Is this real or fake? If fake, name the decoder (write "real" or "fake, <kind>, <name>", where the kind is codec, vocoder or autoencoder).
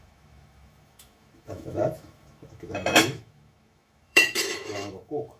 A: fake, autoencoder, DAC-VAE